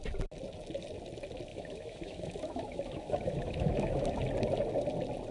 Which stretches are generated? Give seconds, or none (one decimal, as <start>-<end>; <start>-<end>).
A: 1.5-4.2